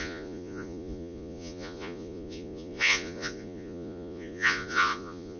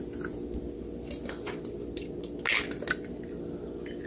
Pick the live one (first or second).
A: second